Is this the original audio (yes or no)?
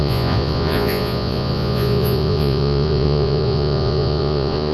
no